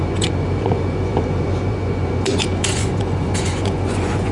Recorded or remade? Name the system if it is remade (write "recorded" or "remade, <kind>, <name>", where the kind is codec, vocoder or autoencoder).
remade, vocoder, Vocos